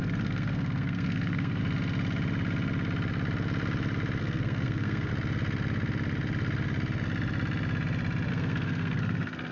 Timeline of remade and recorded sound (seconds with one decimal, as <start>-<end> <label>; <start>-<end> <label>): 0.0-1.6 remade; 1.6-4.2 recorded; 4.2-5.1 remade; 5.1-8.3 recorded; 8.3-9.5 remade